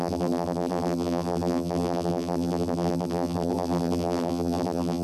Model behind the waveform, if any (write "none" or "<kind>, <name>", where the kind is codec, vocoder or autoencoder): vocoder, BigVGAN v2